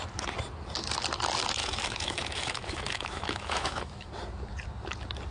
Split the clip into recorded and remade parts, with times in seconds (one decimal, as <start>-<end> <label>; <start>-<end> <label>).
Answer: 0.0-1.6 recorded; 1.6-4.1 remade; 4.1-5.3 recorded